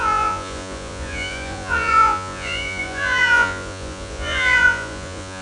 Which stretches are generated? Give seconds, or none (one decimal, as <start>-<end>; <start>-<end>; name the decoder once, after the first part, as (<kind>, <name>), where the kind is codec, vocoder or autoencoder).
0.0-5.4 (vocoder, Vocos)